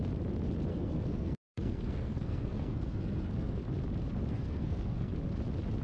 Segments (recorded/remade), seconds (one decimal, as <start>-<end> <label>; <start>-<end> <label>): 0.0-0.7 recorded; 0.7-3.6 remade; 3.6-4.3 recorded; 4.3-5.1 remade; 5.1-5.8 recorded